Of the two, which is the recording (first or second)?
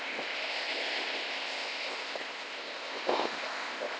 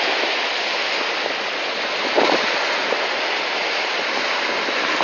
second